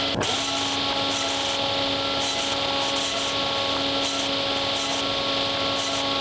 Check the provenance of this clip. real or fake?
real